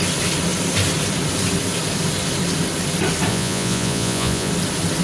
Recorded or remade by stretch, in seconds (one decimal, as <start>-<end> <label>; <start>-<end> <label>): 0.0-3.3 recorded; 3.3-4.5 remade; 4.5-5.0 recorded